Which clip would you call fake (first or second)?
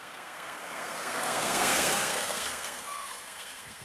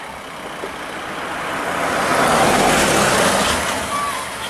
first